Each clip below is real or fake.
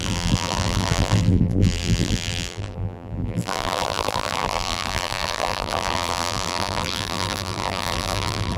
fake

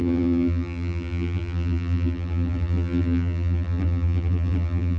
fake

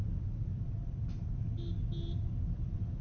real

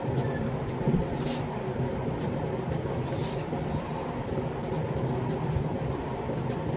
real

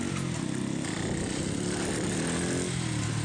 real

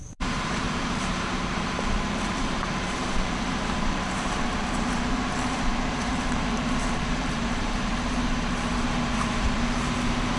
fake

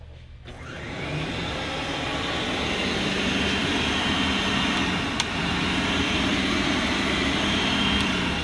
real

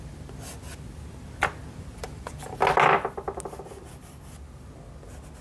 real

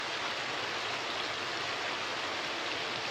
real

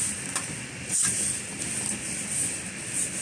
real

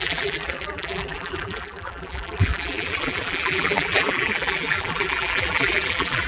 fake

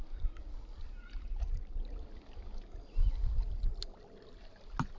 real